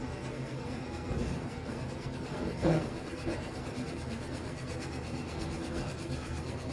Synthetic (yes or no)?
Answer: yes